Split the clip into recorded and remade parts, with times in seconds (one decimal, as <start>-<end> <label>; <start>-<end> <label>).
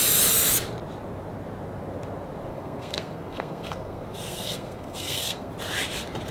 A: 0.0-2.5 recorded; 2.5-5.5 remade; 5.5-6.3 recorded